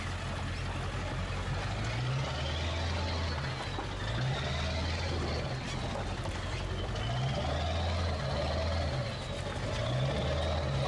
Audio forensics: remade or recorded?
recorded